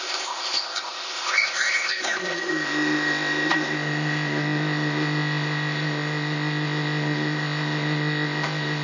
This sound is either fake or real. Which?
fake